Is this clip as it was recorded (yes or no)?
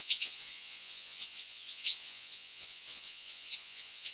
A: no